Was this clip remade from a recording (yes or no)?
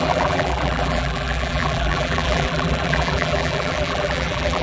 yes